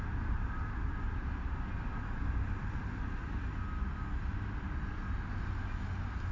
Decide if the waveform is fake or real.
real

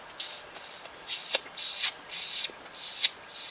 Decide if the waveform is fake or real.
real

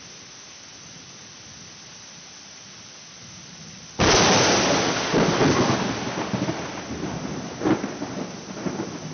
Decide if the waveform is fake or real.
real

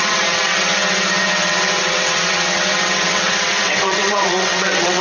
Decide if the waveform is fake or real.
fake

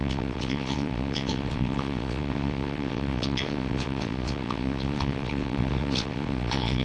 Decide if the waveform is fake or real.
fake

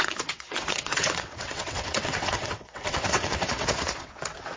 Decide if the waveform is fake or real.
fake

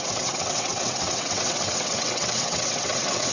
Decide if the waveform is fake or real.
fake